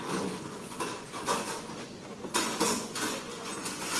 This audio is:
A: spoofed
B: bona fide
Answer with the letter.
A